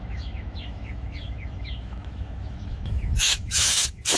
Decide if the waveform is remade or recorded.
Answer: remade